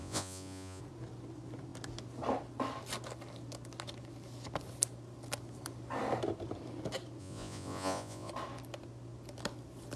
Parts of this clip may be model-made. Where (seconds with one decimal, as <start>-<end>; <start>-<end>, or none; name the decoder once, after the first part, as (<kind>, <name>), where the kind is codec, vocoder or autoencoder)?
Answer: 0.0-0.8 (vocoder, Vocos); 7.2-8.3